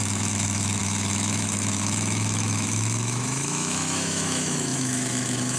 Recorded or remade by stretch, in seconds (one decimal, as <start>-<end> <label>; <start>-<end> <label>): 0.0-5.6 remade